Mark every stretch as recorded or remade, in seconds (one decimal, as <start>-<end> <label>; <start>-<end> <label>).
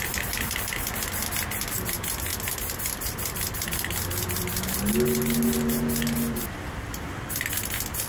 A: 0.0-8.1 recorded